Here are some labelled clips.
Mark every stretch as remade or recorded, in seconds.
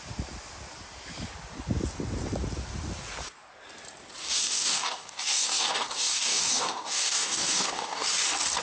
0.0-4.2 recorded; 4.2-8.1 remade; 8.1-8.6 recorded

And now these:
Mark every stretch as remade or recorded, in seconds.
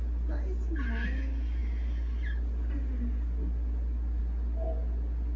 0.0-5.4 recorded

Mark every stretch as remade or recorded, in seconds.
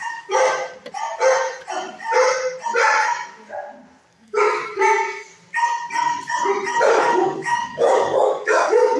0.0-0.4 remade; 0.4-4.1 recorded; 4.1-5.3 remade; 5.3-6.9 recorded; 6.9-9.0 remade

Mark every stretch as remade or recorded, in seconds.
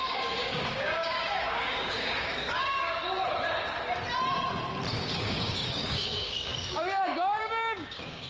0.0-3.0 remade; 3.0-5.1 recorded; 5.1-8.3 remade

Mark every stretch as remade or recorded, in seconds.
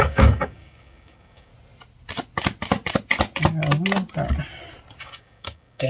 0.0-1.5 remade; 1.5-5.0 recorded; 5.0-5.9 remade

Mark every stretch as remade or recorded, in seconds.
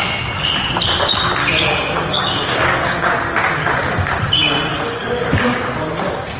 0.0-1.4 recorded; 1.4-3.1 remade; 3.1-4.7 recorded; 4.7-5.6 remade; 5.6-6.4 recorded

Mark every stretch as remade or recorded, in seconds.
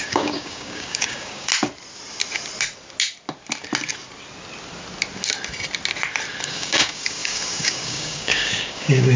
0.0-1.5 remade; 1.5-6.4 recorded; 6.4-9.2 remade